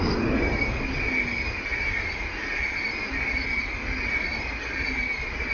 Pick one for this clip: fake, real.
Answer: real